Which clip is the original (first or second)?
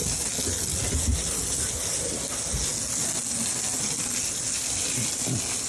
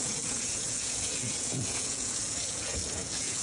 first